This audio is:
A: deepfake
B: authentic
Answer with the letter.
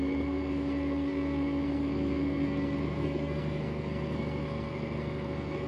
A